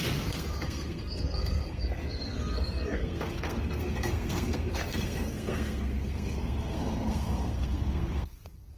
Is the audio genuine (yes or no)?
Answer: no